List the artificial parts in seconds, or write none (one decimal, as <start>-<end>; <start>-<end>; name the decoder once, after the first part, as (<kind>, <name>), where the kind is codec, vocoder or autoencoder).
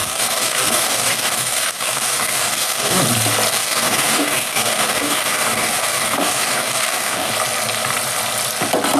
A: 0.0-3.0 (codec, DAC); 3.5-7.3